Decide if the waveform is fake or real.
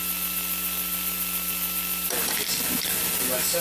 real